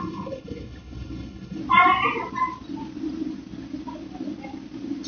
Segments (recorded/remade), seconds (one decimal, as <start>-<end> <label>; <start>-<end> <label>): 0.0-1.6 remade; 1.6-5.1 recorded